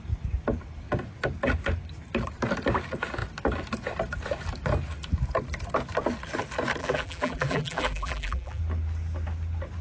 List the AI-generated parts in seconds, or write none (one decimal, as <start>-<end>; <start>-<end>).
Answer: 6.8-8.6